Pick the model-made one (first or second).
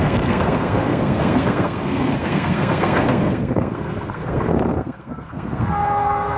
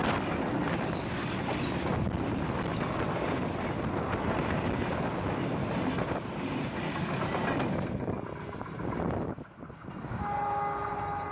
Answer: first